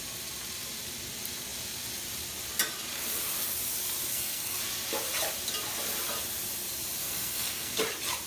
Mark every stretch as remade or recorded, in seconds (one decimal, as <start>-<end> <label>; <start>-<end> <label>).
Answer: 0.0-4.1 recorded; 4.1-4.6 remade; 4.6-7.0 recorded; 7.0-7.8 remade; 7.8-8.3 recorded